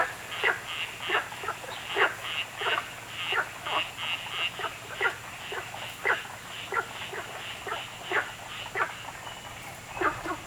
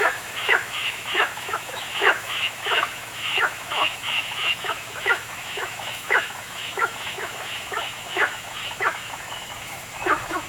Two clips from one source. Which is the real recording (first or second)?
first